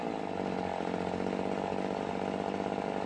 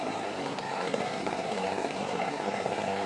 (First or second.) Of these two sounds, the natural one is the first